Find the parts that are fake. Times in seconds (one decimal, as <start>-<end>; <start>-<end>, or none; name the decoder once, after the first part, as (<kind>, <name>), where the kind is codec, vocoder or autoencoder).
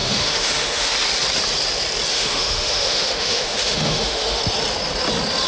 0.0-0.9 (autoencoder, DAC-VAE); 2.1-4.4